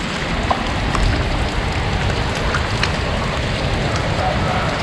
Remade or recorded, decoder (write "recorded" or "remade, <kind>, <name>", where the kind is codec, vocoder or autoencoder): recorded